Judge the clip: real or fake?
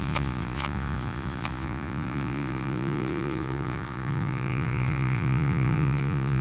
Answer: fake